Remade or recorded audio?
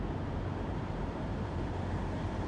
remade